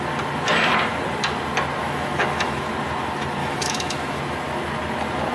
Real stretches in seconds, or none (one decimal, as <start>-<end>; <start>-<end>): 0.0-1.8; 2.7-3.4; 4.2-5.3